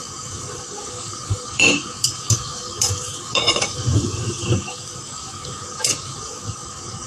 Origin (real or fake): fake